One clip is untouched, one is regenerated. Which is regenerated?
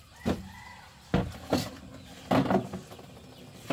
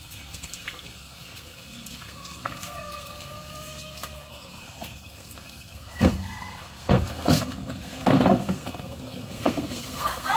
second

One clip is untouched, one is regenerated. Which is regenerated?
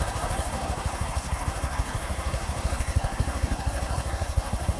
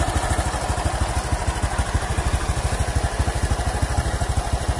first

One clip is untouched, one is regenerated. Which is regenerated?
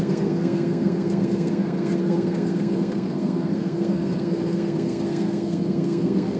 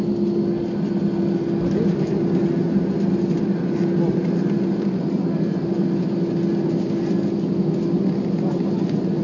first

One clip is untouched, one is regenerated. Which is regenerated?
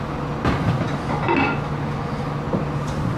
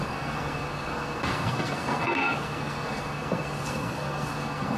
second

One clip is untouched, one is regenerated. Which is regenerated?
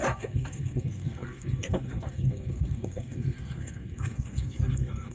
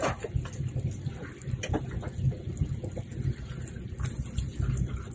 first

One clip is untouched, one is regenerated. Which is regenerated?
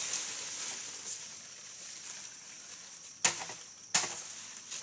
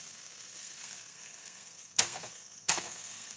second